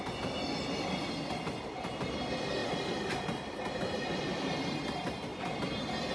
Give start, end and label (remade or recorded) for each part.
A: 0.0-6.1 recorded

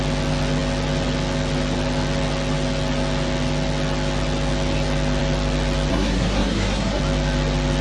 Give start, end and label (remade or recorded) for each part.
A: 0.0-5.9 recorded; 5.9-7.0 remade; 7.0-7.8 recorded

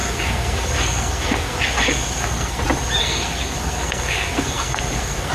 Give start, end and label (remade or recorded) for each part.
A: 0.0-2.6 remade; 2.6-3.0 recorded; 3.0-5.3 remade